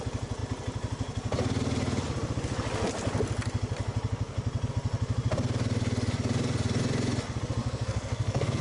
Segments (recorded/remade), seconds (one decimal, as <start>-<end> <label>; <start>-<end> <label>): 0.0-7.6 recorded; 7.6-8.6 remade